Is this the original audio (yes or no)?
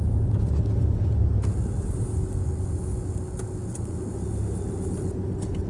yes